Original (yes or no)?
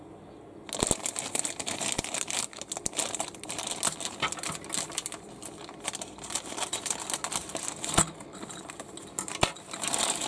yes